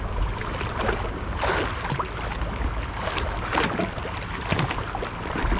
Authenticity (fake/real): real